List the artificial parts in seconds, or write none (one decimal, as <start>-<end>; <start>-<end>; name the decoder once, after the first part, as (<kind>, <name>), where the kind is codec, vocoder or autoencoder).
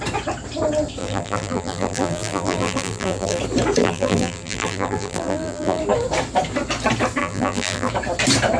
1.0-3.4 (vocoder, BigVGAN v2); 3.8-5.8; 7.2-7.9